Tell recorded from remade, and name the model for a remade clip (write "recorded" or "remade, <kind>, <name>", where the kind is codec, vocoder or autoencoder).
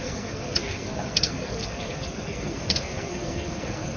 remade, codec, SNAC